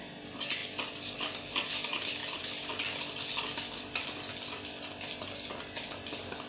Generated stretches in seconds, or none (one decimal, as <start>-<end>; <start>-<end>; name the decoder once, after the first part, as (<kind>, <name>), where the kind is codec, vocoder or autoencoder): none

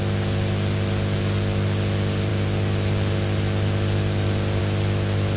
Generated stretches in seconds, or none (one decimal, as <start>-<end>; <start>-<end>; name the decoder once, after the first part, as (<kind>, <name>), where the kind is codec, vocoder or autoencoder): none